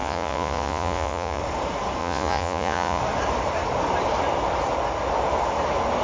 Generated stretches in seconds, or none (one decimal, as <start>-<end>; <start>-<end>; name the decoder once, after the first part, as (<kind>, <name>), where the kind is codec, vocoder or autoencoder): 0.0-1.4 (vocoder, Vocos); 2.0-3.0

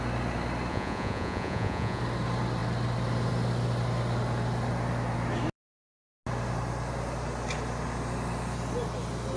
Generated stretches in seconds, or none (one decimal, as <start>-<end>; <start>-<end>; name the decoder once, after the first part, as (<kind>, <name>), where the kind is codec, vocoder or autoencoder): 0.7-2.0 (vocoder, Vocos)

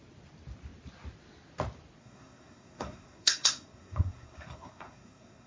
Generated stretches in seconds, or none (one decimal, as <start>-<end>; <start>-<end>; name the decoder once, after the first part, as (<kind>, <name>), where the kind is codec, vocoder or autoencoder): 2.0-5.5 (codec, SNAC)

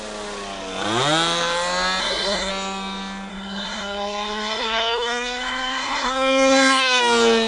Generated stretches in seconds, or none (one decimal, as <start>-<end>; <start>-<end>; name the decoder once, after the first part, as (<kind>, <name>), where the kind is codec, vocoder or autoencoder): 2.0-2.5 (codec, SNAC); 3.3-7.0

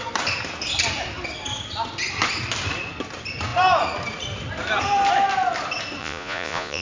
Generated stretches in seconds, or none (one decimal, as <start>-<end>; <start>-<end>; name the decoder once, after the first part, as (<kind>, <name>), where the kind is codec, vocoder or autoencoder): 6.0-6.8 (vocoder, Vocos)

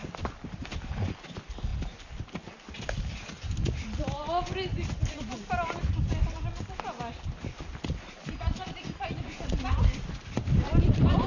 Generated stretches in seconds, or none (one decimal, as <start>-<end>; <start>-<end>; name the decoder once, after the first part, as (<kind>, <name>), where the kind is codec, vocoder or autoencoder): none

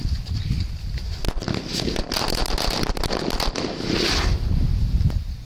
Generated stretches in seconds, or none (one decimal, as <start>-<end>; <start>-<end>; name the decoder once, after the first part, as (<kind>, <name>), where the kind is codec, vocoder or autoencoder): none